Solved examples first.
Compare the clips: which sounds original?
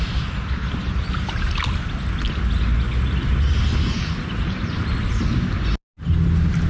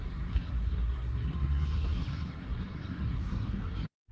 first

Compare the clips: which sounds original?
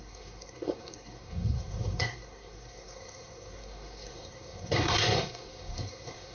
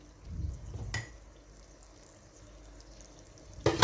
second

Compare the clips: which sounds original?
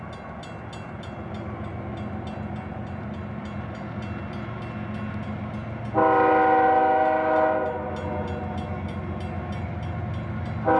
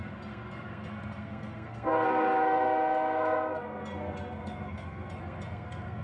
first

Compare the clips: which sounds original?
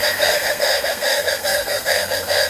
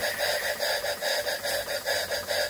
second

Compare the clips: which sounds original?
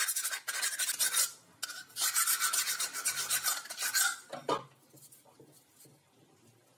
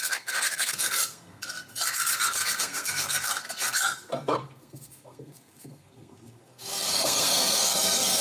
first